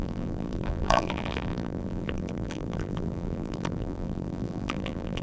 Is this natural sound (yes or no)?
no